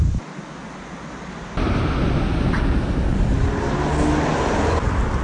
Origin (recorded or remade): recorded